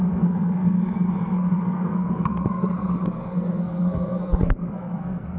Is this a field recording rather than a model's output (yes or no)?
no